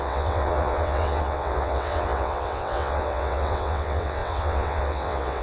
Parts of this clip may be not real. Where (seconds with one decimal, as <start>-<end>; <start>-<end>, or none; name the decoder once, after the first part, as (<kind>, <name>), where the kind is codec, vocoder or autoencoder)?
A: 0.0-5.4 (vocoder, WaveNeXt)